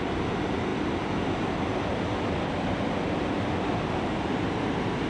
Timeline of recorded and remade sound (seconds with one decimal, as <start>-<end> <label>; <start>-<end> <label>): 0.0-0.7 recorded; 0.7-3.8 remade; 3.8-5.1 recorded